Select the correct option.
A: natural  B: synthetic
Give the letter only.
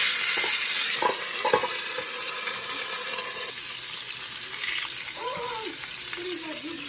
A